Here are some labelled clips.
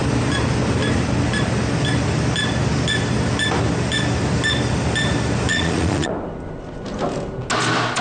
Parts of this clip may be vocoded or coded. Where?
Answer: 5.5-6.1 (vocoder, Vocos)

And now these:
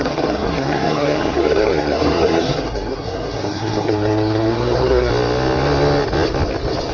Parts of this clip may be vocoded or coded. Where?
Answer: 0.0-5.1 (codec, SNAC)

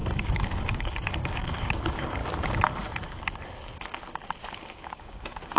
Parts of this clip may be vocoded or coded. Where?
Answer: 0.0-2.2 (codec, DAC); 4.5-5.6

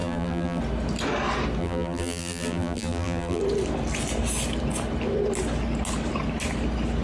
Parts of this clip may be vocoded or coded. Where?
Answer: 0.0-0.6 (vocoder, BigVGAN v2); 1.6-3.4